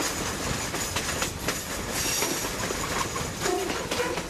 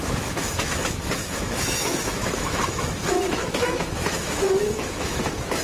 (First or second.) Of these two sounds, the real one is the first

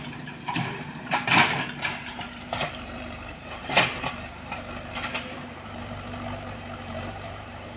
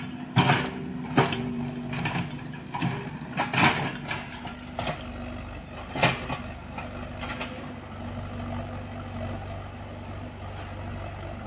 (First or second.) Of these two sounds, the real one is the second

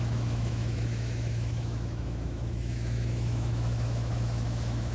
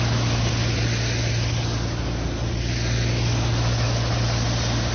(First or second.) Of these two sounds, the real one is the second